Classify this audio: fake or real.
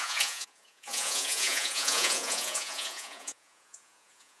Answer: fake